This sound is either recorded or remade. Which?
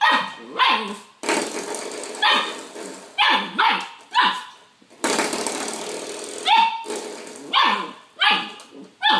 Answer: recorded